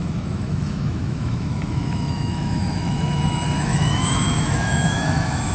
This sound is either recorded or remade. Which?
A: remade